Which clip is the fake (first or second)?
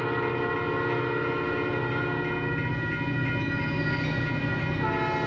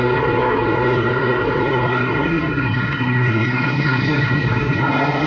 second